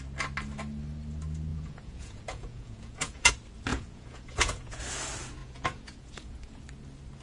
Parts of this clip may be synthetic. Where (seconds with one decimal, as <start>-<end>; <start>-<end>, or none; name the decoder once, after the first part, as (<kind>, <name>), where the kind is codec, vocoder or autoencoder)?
1.5-3.3 (vocoder, Vocos); 3.7-4.8; 5.4-6.6